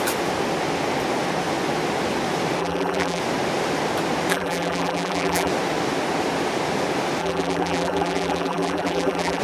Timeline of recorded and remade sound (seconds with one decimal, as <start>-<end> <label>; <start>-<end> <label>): 0.0-2.6 recorded; 2.6-3.2 remade; 3.2-4.3 recorded; 4.3-5.5 remade; 5.5-7.2 recorded; 7.2-9.4 remade